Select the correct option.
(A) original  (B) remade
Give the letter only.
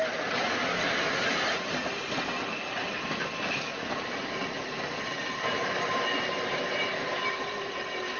B